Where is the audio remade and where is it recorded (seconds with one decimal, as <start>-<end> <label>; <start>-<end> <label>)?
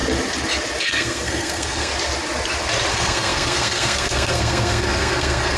0.0-0.8 recorded; 0.8-1.9 remade; 1.9-2.9 recorded; 2.9-5.6 remade